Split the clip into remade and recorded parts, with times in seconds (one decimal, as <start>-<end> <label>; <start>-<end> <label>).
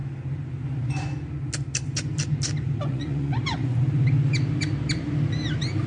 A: 0.0-2.8 recorded; 2.8-3.8 remade; 3.8-5.9 recorded